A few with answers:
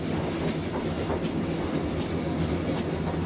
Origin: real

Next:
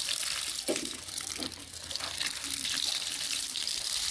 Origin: fake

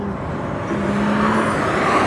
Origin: real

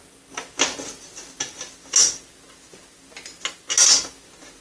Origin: real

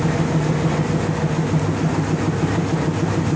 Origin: real